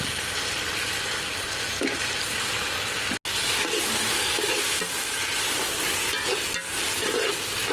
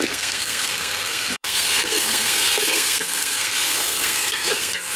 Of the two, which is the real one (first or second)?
first